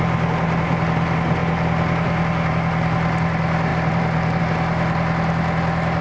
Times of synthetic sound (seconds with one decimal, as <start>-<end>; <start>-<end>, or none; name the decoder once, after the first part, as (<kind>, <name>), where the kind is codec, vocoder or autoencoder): 3.7-4.4 (vocoder, BigVGAN v2)